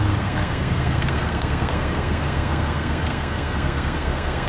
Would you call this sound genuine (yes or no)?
no